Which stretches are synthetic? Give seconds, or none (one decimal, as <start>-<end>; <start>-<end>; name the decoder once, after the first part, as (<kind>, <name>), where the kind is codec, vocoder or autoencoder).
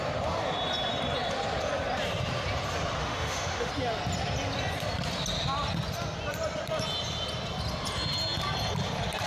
3.0-3.7 (autoencoder, DAC-VAE)